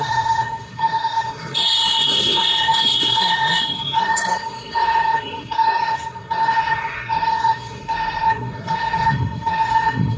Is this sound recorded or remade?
remade